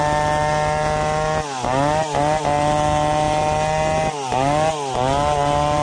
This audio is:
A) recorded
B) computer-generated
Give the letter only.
A